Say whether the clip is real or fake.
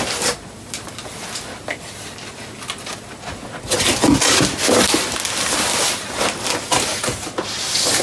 real